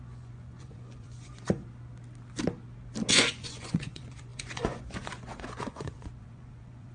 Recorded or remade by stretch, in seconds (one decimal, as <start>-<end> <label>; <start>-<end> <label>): 0.0-1.6 remade; 1.6-3.1 recorded; 3.1-6.9 remade